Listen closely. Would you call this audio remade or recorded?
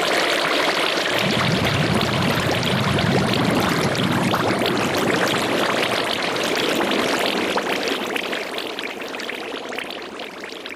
remade